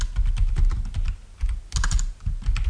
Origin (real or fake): real